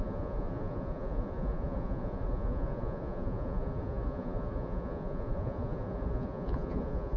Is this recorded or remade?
remade